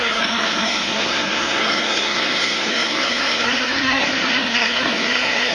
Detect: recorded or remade remade